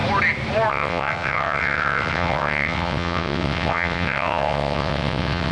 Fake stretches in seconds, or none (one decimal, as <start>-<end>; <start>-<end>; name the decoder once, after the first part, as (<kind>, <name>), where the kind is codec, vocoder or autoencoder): 0.7-5.5 (vocoder, WaveNeXt)